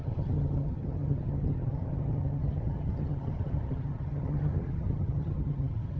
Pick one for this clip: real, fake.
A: fake